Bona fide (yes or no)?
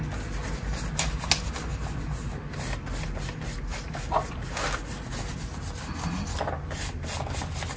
yes